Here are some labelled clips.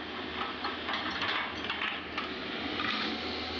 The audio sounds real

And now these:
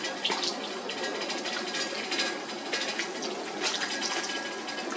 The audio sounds real